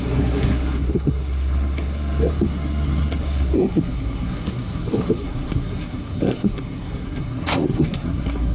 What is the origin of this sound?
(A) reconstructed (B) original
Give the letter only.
A